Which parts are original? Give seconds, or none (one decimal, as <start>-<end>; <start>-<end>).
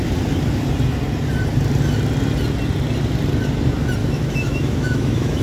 0.0-4.0